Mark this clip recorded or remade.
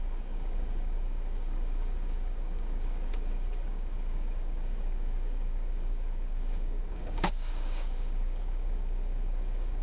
remade